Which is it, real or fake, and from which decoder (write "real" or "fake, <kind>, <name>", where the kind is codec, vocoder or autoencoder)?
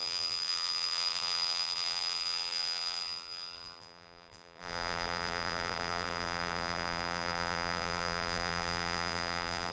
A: fake, vocoder, BigVGAN v2